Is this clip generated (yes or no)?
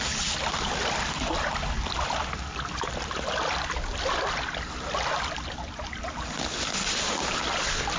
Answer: no